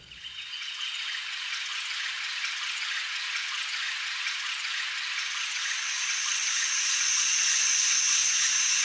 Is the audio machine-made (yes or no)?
yes